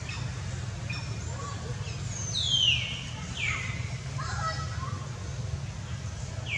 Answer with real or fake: real